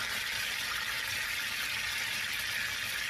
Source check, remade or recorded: recorded